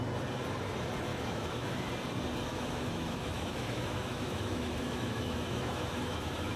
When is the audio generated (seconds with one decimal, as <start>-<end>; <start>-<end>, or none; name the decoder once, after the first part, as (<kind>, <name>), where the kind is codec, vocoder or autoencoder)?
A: 1.1-1.8 (autoencoder, DAC-VAE); 2.5-6.6